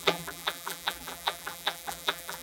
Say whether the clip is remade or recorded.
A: remade